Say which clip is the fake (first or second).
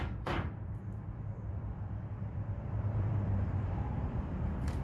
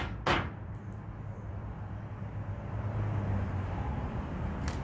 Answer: first